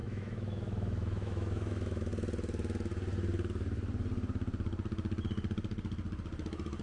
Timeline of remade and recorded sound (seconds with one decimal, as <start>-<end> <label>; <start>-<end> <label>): 0.0-2.1 remade; 2.1-6.8 recorded